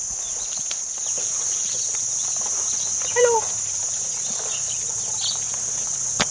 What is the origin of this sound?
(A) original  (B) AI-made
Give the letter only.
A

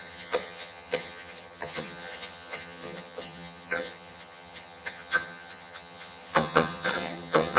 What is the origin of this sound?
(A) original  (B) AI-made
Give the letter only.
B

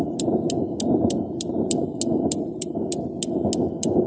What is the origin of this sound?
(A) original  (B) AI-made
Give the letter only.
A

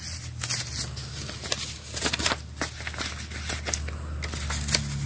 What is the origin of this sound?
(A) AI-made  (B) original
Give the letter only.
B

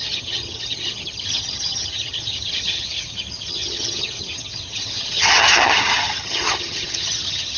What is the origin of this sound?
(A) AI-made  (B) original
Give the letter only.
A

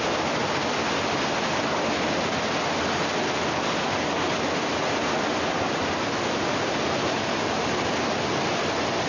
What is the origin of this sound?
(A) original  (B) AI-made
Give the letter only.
A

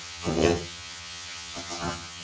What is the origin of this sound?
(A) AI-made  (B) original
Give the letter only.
A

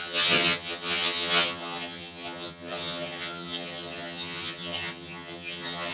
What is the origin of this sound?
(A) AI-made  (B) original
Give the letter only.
A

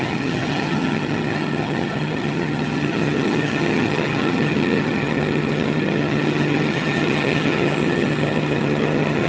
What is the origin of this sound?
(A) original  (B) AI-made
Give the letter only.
B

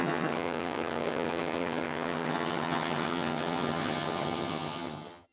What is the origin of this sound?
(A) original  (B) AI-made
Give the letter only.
B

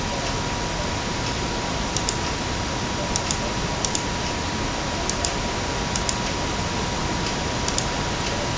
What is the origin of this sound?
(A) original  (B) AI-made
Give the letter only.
A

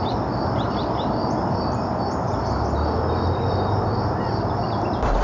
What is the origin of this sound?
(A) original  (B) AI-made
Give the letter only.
A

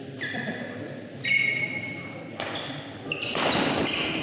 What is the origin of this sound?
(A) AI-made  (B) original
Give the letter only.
B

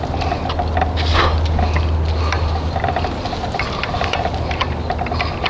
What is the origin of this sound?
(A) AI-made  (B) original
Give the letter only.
B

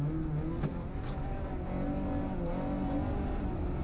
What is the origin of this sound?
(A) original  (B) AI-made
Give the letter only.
A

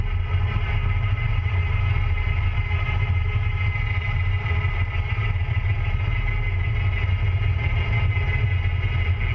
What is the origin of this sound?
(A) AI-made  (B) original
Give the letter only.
B